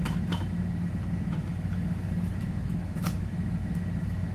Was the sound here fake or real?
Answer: fake